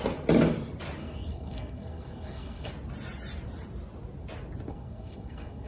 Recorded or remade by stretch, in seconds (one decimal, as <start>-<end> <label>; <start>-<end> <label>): 0.0-1.0 recorded; 1.0-2.7 remade; 2.7-4.7 recorded; 4.7-5.7 remade